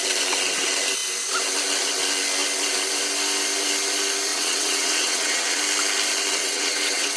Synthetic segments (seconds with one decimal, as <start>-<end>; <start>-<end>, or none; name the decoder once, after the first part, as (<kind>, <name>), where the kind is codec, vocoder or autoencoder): 4.3-5.6 (vocoder, WaveNeXt); 6.4-7.2